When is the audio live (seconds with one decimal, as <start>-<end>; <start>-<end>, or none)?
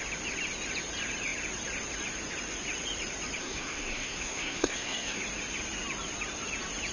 0.0-3.4; 5.2-6.9